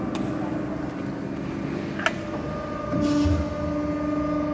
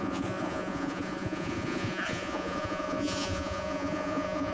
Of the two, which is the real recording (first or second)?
first